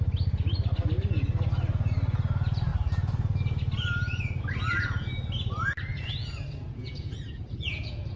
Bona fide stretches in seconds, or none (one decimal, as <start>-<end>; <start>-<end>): 0.0-5.9